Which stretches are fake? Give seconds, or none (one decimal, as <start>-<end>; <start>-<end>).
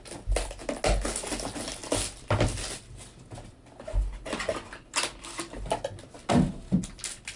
none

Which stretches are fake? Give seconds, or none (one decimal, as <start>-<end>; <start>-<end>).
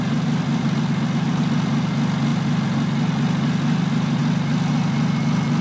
none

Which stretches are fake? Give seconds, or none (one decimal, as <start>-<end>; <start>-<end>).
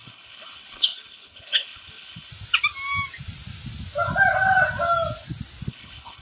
0.0-2.3; 5.7-6.2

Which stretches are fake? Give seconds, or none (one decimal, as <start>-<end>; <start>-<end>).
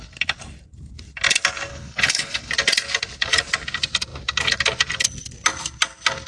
1.7-2.5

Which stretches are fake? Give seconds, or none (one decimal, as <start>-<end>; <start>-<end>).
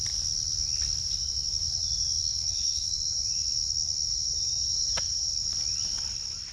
2.3-2.9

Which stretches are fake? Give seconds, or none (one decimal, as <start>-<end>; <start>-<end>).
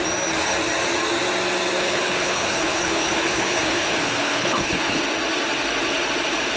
1.8-5.0